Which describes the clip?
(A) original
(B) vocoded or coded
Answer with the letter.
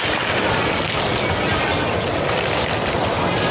A